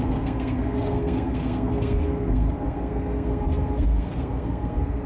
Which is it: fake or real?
fake